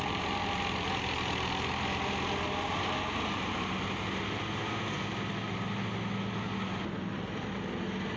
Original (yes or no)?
yes